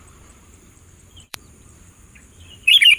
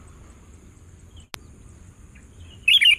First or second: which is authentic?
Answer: second